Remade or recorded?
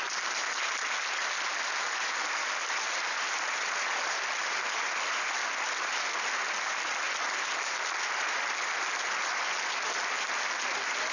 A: recorded